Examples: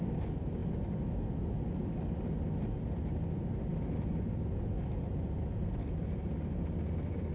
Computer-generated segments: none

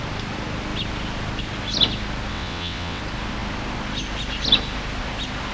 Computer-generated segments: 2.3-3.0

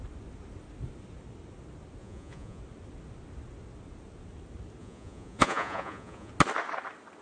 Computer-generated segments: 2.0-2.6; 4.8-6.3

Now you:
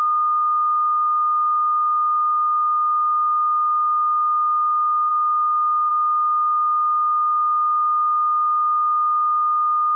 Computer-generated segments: 5.1-5.9